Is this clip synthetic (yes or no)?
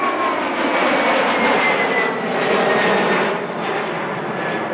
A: no